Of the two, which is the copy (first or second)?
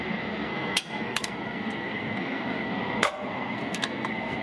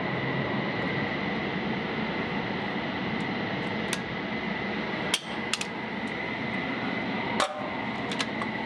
first